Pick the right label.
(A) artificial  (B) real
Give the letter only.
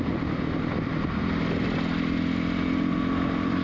B